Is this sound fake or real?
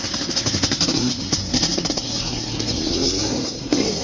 fake